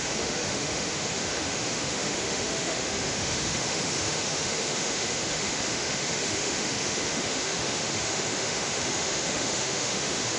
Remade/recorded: remade